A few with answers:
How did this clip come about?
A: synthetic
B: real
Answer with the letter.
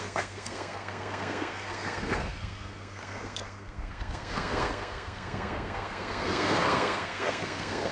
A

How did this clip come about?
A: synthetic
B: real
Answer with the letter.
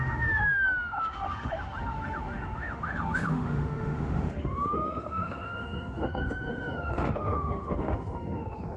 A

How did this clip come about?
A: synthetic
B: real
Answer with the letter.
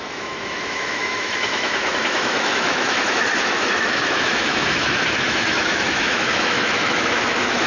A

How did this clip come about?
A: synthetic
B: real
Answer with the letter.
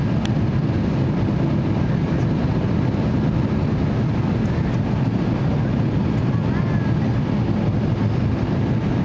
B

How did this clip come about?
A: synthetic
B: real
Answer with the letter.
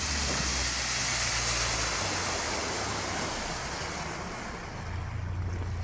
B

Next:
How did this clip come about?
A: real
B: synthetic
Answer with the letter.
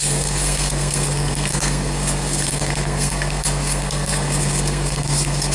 B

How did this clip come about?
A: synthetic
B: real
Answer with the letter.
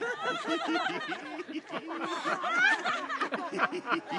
B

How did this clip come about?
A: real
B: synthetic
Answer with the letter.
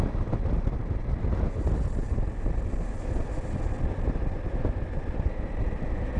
A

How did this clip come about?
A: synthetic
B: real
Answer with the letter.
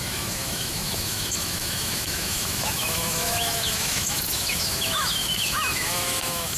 A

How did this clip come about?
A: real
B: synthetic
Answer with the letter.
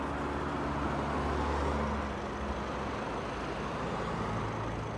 A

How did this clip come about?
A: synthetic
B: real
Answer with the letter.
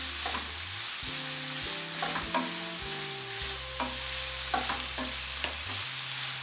B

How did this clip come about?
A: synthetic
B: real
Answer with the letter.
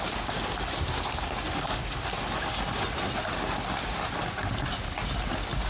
B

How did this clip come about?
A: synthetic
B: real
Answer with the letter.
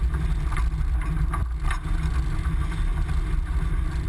B